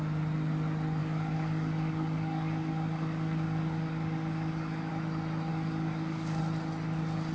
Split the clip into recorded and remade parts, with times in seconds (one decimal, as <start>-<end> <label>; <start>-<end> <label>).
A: 0.0-1.0 recorded; 1.0-4.9 remade; 4.9-5.5 recorded; 5.5-6.4 remade; 6.4-7.3 recorded